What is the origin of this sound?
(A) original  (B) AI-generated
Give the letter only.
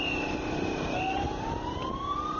A